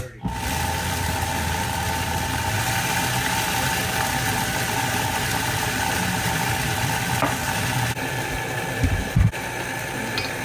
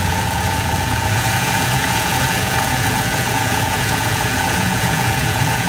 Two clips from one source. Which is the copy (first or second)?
second